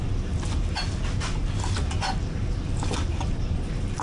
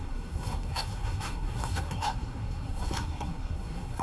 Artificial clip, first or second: second